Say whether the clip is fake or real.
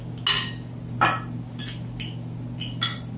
real